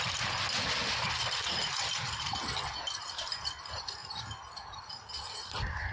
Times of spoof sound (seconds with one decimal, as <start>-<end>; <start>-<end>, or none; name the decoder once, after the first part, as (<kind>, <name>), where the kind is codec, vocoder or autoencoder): 4.0-4.9 (vocoder, BigVGAN v2)